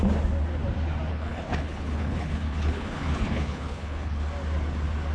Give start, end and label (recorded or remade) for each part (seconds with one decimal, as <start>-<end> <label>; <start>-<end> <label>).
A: 0.0-1.1 recorded; 1.1-4.2 remade; 4.2-5.1 recorded